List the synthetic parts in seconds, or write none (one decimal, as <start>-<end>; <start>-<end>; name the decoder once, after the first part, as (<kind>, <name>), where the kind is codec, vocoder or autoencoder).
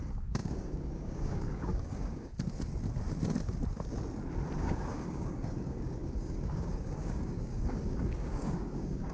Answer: 0.0-2.3 (codec, DAC); 4.6-9.1